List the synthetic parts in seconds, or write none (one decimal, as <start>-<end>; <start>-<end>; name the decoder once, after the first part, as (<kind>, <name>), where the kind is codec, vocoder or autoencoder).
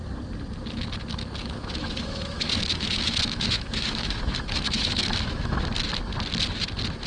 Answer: 1.4-5.7 (autoencoder, DAC-VAE)